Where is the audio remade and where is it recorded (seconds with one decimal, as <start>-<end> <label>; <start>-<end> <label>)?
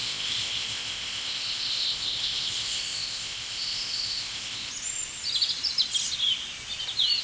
0.0-4.7 remade; 4.7-7.2 recorded